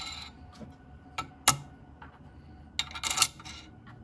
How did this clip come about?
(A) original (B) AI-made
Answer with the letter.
A